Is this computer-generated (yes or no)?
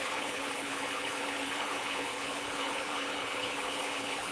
yes